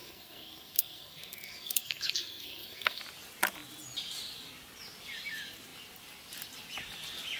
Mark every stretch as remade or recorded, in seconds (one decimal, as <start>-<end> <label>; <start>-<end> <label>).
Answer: 0.0-3.0 remade; 3.0-7.4 recorded